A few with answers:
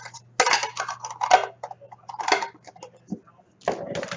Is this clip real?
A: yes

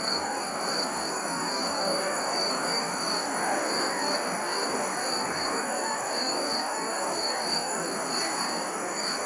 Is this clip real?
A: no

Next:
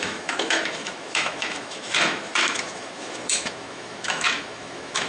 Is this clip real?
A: no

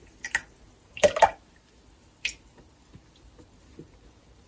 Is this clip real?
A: yes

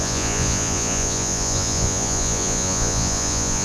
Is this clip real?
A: no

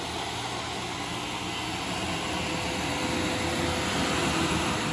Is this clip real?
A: yes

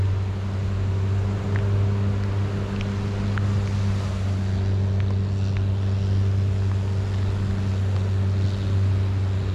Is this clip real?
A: yes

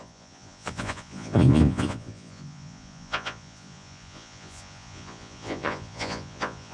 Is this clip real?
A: no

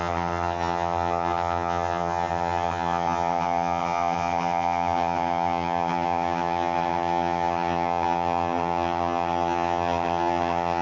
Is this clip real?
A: no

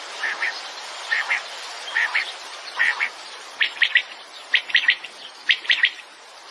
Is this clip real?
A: no